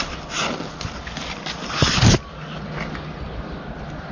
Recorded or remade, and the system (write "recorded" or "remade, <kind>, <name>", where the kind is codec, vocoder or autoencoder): recorded